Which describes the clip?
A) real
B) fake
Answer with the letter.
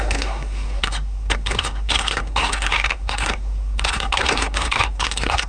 B